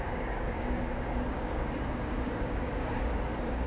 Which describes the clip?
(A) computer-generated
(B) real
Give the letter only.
A